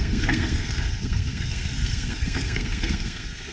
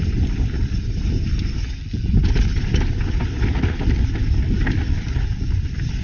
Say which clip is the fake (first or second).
first